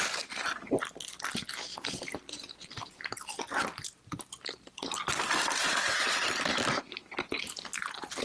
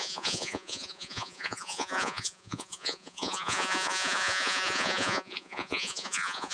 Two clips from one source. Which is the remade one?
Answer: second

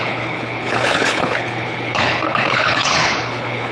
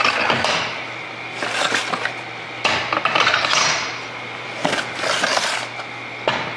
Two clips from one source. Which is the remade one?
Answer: first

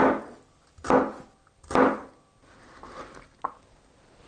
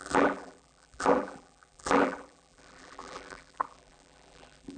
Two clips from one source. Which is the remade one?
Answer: second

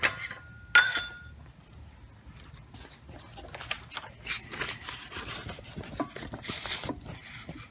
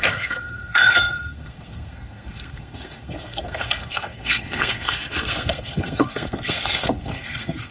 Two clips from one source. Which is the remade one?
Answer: second